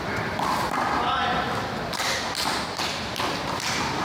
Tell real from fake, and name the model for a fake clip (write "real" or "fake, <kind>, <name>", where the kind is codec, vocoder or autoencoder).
real